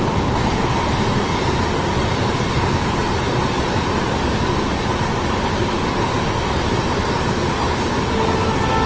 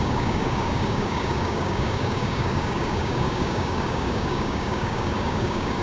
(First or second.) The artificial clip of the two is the second